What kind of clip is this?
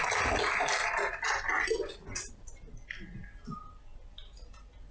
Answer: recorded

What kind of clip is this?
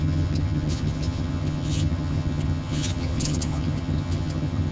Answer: remade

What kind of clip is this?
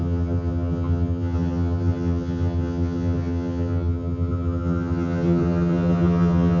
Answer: remade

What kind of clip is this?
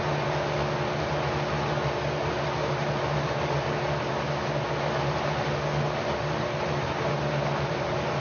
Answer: recorded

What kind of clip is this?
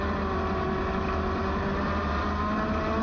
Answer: recorded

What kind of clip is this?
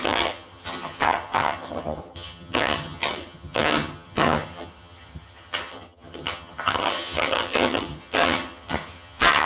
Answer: remade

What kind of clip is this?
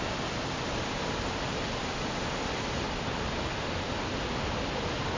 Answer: recorded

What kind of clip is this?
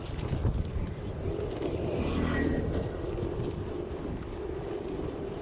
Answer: recorded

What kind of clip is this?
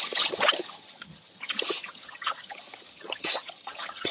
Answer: remade